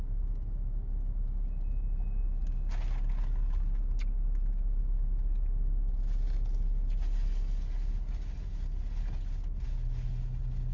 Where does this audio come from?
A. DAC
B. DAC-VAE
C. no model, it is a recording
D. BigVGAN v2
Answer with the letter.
C